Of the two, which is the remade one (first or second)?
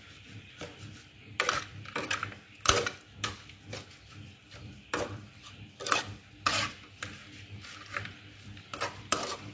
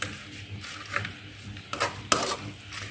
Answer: first